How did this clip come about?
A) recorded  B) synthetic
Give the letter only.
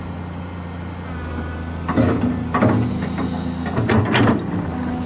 A